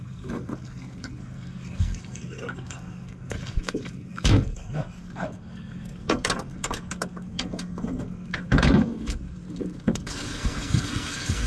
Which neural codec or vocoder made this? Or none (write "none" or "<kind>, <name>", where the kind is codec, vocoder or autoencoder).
codec, SNAC